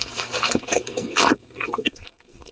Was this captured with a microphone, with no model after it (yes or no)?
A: no